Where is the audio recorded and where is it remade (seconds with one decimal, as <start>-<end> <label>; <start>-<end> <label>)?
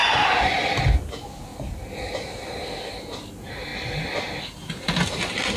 0.0-5.6 recorded